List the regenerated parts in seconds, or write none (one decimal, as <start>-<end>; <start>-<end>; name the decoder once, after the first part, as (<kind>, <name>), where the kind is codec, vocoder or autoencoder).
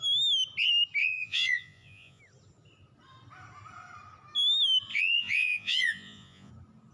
1.0-2.2 (vocoder, Vocos); 4.9-6.5